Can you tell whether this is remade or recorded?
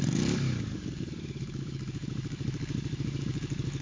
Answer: remade